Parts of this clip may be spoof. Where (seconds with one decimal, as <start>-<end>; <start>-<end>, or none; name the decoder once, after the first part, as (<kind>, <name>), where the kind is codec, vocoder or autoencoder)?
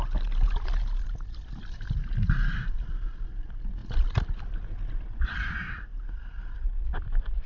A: none